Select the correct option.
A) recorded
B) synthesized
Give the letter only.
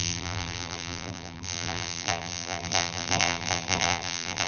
B